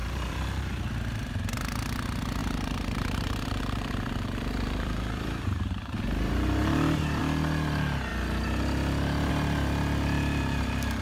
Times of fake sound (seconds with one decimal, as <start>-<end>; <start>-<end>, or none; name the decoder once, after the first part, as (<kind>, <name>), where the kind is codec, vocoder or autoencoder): 0.0-0.7 (vocoder, BigVGAN v2); 2.4-7.2